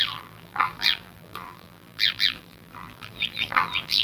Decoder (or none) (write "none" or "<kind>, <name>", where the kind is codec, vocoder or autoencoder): vocoder, BigVGAN v2